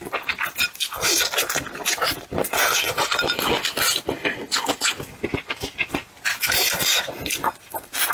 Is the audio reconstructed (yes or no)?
no